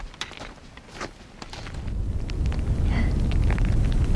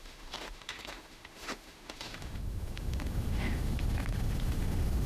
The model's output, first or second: second